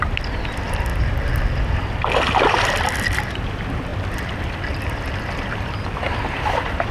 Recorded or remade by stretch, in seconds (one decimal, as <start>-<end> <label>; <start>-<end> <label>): 0.0-0.9 remade; 0.9-2.4 recorded; 2.4-6.9 remade